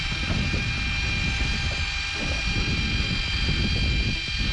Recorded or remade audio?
recorded